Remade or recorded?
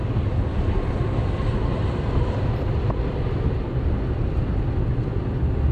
recorded